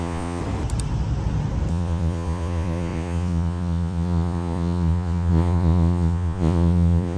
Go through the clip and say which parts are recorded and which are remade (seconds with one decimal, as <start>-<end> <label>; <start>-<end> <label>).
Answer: 0.0-0.4 remade; 0.4-1.7 recorded; 1.7-7.2 remade